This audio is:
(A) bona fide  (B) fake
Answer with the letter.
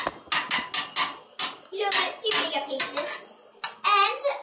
A